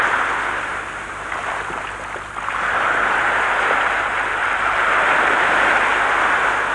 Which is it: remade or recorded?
recorded